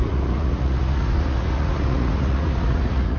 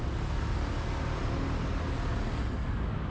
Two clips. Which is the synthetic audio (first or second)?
first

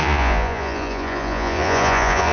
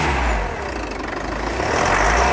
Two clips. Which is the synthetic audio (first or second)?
first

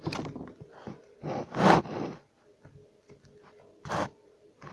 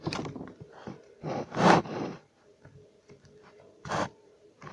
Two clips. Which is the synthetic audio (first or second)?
second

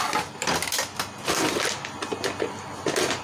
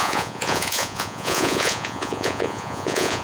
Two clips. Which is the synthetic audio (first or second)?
second